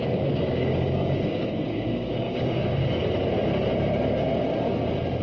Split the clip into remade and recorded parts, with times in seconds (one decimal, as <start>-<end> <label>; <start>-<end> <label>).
0.0-2.8 remade; 2.8-5.2 recorded